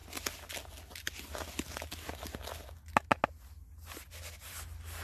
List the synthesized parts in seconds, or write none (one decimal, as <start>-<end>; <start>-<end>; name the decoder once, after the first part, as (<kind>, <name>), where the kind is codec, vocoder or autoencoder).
none